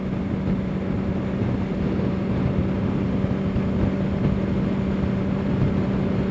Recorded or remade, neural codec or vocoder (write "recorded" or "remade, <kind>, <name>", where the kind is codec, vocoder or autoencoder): recorded